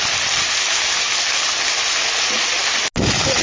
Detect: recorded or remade recorded